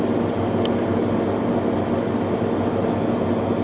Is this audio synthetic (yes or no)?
no